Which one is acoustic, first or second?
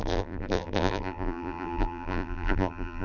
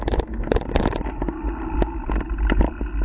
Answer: second